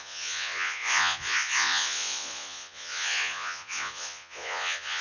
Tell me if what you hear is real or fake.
fake